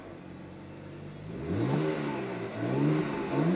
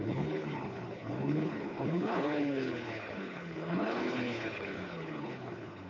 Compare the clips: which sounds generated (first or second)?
second